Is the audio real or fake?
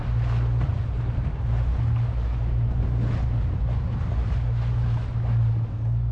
real